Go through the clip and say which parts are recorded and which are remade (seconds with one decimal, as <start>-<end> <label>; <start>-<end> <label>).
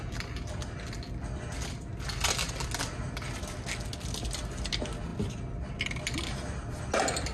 0.0-7.3 recorded